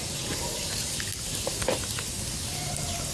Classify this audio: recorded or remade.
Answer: recorded